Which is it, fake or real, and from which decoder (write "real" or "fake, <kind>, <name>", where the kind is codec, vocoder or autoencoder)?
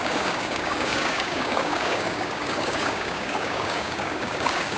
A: fake, codec, DAC